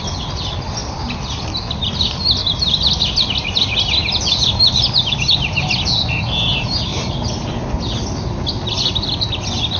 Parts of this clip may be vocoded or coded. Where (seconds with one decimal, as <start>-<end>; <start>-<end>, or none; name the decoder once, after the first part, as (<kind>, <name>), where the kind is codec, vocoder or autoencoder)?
none